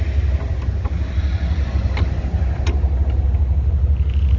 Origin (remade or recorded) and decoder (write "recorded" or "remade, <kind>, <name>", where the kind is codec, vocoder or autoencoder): recorded